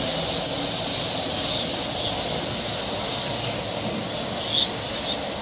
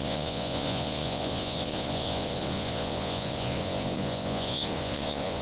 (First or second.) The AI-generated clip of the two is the second